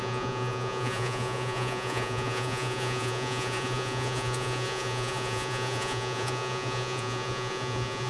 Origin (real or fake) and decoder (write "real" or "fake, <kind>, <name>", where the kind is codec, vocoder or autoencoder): fake, vocoder, Vocos